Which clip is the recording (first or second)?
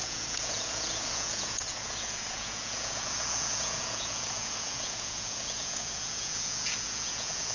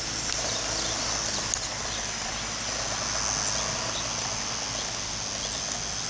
second